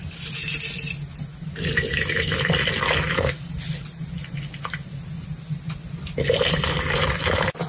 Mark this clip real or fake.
real